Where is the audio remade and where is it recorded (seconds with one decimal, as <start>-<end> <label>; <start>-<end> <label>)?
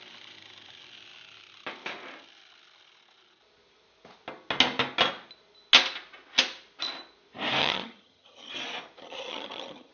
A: 0.0-7.6 recorded; 7.6-8.5 remade; 8.5-9.0 recorded; 9.0-9.9 remade